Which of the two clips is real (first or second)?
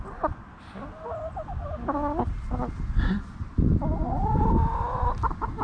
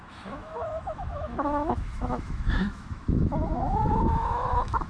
first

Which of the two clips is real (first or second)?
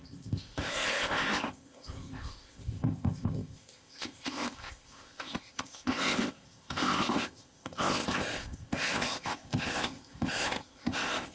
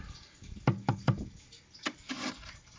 second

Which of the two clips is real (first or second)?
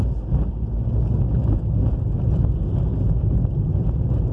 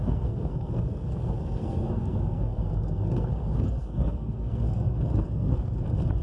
first